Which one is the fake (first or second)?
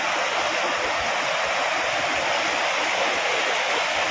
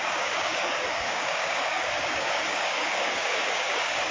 second